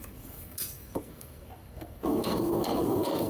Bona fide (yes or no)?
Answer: no